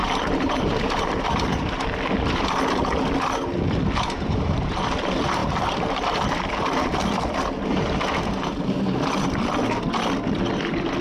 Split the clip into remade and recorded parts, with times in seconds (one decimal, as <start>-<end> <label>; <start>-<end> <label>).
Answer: 0.0-1.2 remade; 1.2-5.4 recorded; 5.4-6.3 remade; 6.3-11.0 recorded